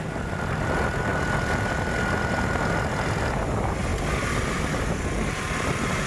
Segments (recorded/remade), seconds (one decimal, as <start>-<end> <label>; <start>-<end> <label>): 0.0-1.1 remade; 1.1-3.4 recorded; 3.4-3.9 remade; 3.9-4.6 recorded; 4.6-6.1 remade

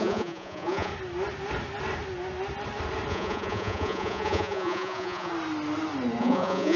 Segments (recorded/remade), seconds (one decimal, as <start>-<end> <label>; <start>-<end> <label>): 0.0-0.9 remade; 0.9-3.1 recorded; 3.1-5.3 remade; 5.3-6.2 recorded; 6.2-6.8 remade

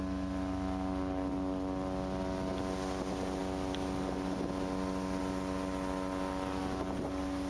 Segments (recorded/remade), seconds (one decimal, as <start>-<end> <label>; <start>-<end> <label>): 0.0-7.5 recorded

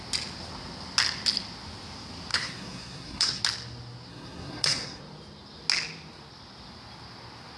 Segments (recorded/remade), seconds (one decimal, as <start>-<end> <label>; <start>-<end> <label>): 0.0-2.3 recorded; 2.3-3.4 remade; 3.4-4.1 recorded; 4.1-5.0 remade; 5.0-7.6 recorded

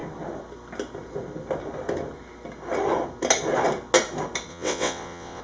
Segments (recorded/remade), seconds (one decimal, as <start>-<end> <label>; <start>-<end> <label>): 0.0-4.5 recorded; 4.5-5.4 remade

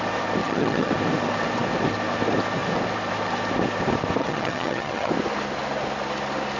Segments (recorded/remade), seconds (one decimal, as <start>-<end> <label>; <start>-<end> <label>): 0.0-0.4 recorded; 0.4-0.9 remade; 0.9-4.2 recorded; 4.2-5.1 remade; 5.1-6.6 recorded

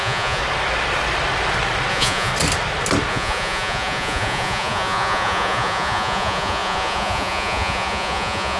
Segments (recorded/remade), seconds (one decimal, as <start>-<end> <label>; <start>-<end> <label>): 0.0-0.4 remade; 0.4-1.9 recorded; 1.9-2.3 remade; 2.3-3.1 recorded; 3.1-8.6 remade

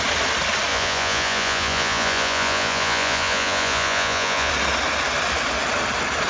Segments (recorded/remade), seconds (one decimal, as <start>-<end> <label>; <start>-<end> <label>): 0.0-0.7 recorded; 0.7-4.5 remade; 4.5-6.3 recorded